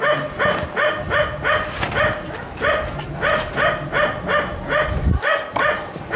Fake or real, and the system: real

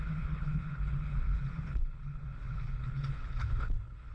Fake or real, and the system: fake, codec, HILCodec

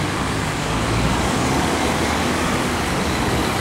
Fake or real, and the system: fake, codec, DAC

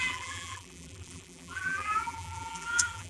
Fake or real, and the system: fake, vocoder, BigVGAN v2